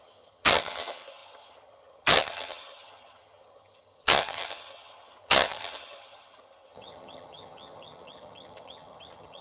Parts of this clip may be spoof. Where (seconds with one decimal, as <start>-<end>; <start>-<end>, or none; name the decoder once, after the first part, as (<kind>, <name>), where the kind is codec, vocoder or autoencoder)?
0.0-9.4 (vocoder, HiFi-GAN)